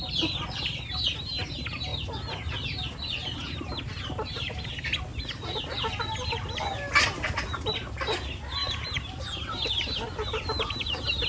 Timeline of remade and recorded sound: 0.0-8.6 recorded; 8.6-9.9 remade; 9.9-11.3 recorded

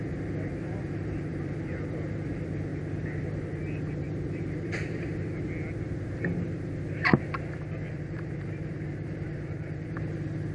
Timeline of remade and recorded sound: 0.0-2.7 remade; 2.7-4.0 recorded; 4.0-5.1 remade; 5.1-7.9 recorded; 7.9-10.5 remade